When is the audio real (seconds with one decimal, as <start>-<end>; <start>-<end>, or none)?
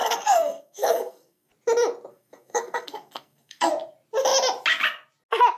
1.5-2.1; 3.7-5.6